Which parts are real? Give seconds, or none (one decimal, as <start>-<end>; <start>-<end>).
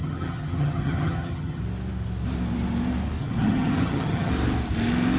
1.6-3.2; 4.3-5.2